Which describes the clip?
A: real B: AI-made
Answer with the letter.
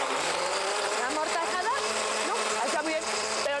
A